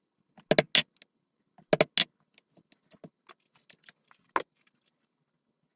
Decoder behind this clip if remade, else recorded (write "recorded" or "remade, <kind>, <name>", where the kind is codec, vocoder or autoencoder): recorded